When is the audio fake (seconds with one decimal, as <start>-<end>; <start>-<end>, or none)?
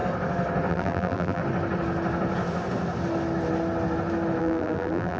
0.7-1.4; 4.4-5.2